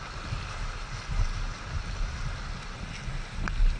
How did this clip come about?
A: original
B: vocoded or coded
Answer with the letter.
A